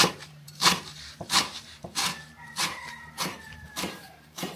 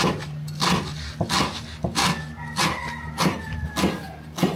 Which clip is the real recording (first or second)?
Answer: second